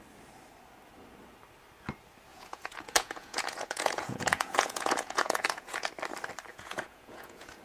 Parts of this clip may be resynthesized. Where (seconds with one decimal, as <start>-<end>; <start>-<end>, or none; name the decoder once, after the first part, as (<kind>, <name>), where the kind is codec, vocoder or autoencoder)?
2.3-5.9 (vocoder, Vocos); 6.5-7.6